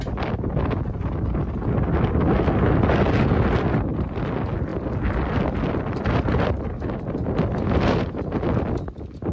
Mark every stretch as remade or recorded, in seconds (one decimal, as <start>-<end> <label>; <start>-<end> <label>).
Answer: 0.0-9.3 recorded